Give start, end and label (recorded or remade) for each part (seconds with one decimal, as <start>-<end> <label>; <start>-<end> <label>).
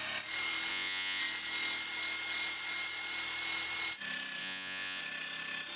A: 0.0-0.7 recorded; 0.7-1.2 remade; 1.2-4.4 recorded; 4.4-5.0 remade; 5.0-5.8 recorded